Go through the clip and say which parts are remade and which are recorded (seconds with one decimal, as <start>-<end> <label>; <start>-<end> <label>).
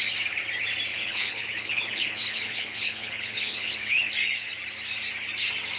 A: 0.0-0.9 recorded; 0.9-4.1 remade; 4.1-5.8 recorded